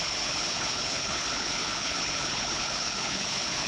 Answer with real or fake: fake